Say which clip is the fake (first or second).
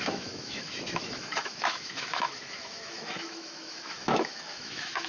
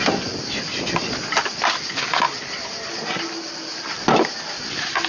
first